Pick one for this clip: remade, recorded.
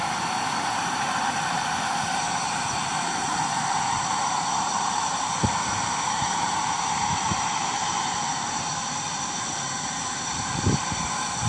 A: remade